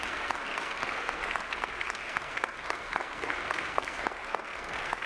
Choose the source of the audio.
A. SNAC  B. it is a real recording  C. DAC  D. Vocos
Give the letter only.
A